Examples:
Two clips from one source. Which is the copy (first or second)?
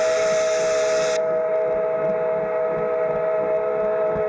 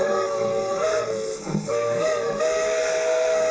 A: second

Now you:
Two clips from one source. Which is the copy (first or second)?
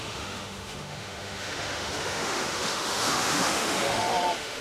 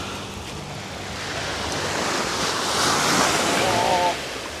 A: first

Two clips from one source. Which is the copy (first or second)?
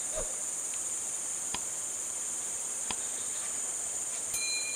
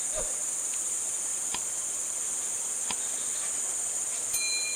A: first